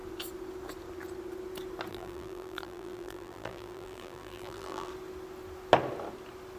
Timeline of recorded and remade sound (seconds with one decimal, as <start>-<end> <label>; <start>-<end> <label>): 0.0-1.9 recorded; 1.9-4.9 remade; 4.9-6.6 recorded